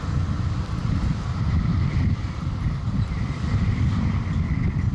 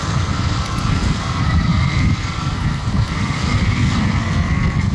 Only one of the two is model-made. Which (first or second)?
second